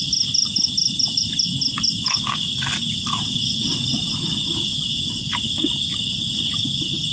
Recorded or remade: recorded